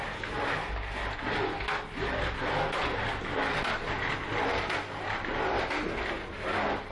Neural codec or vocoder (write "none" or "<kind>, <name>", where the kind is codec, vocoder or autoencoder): none